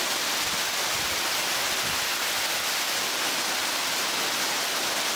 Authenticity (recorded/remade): recorded